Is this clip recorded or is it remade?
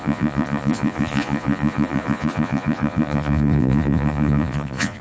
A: remade